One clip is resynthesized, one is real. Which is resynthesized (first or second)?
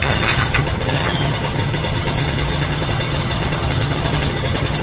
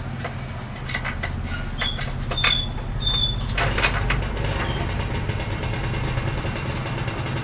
first